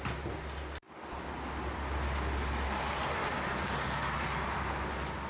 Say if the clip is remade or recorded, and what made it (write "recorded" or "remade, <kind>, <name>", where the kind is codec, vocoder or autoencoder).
recorded